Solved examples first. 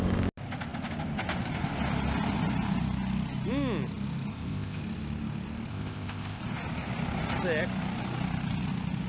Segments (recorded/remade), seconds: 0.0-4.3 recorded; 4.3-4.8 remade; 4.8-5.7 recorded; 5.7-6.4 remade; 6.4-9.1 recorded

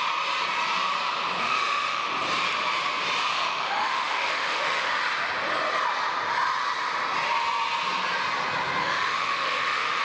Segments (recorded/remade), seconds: 0.0-1.4 recorded; 1.4-2.1 remade; 2.1-3.3 recorded; 3.3-5.0 remade; 5.0-8.8 recorded; 8.8-10.0 remade